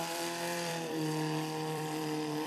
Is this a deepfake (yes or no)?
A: yes